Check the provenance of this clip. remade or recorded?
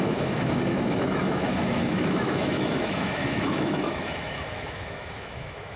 remade